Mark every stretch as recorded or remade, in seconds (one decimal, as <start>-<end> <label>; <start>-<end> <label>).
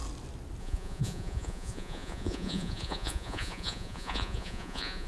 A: 0.0-0.6 recorded; 0.6-5.1 remade